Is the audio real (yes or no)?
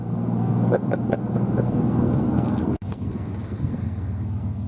no